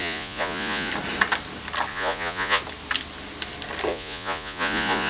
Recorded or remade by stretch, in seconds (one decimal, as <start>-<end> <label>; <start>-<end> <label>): 0.0-0.9 remade; 0.9-1.9 recorded; 1.9-2.6 remade; 2.6-3.9 recorded; 3.9-5.1 remade